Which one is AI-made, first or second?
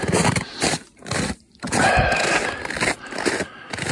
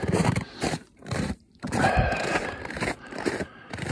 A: second